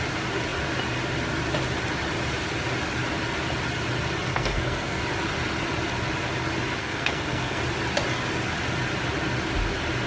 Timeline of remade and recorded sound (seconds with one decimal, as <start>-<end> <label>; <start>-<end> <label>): 0.0-4.3 recorded; 4.3-5.0 remade; 5.0-6.8 recorded; 6.8-7.6 remade; 7.6-10.1 recorded